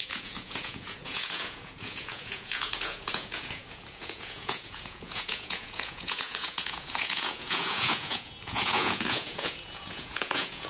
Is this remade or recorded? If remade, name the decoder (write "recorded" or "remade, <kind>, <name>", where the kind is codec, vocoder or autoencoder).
remade, vocoder, Vocos